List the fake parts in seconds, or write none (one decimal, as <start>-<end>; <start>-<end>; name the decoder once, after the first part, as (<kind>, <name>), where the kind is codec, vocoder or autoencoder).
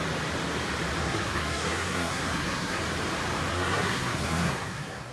1.0-2.8 (codec, SNAC); 3.5-5.1